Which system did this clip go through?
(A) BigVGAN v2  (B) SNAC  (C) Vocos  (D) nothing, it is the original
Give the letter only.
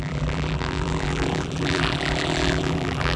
A